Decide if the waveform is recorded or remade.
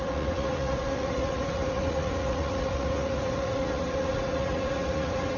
remade